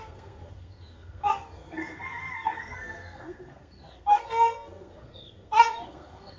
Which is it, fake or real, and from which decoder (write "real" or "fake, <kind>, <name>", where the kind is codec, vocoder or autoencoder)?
fake, codec, SNAC